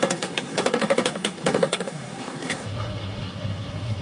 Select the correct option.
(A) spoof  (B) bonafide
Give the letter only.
A